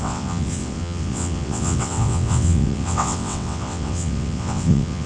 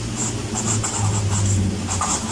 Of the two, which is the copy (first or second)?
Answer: first